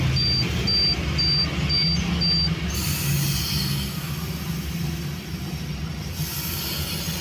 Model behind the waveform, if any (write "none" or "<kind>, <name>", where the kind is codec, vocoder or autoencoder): none